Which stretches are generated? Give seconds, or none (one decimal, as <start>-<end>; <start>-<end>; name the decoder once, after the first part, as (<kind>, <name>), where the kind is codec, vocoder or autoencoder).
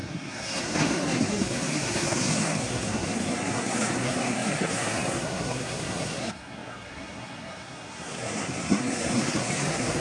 0.0-10.0 (codec, SNAC)